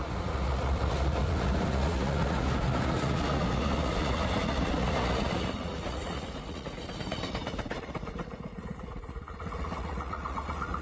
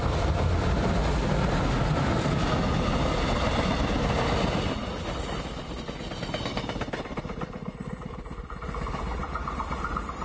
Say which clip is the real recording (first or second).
second